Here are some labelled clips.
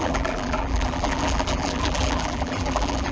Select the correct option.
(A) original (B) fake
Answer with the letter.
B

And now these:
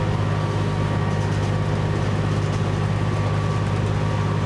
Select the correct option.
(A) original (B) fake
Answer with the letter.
A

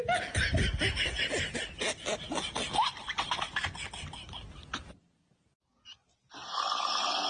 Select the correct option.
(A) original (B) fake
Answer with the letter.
A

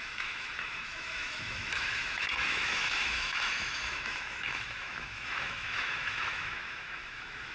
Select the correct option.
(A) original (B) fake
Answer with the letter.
B